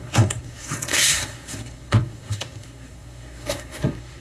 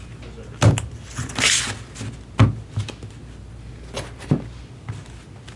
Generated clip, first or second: first